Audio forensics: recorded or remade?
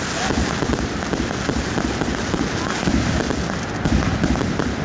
recorded